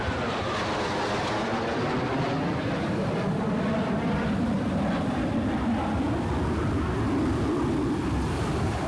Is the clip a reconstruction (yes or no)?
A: no